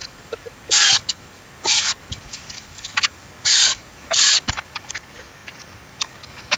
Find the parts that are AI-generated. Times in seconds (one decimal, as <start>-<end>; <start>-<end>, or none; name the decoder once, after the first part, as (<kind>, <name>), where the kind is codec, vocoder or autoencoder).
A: 0.0-6.6 (codec, DAC)